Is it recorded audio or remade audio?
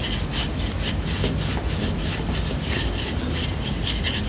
recorded